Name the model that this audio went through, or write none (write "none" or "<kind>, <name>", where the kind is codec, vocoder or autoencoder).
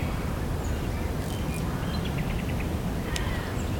none